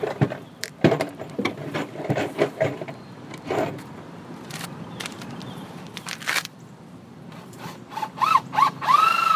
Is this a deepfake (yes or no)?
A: yes